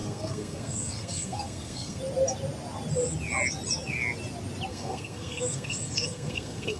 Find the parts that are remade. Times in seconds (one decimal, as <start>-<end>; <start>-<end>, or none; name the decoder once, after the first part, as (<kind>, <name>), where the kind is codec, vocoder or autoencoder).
0.0-2.0 (codec, SNAC); 4.7-6.8